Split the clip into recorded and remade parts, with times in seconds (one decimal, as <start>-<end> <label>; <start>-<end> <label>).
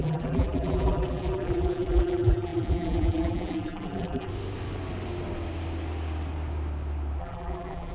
0.0-4.3 remade; 4.3-7.2 recorded; 7.2-7.9 remade